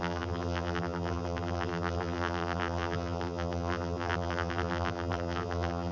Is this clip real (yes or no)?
no